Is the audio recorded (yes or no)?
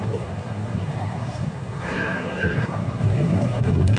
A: no